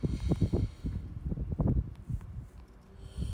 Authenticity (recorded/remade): recorded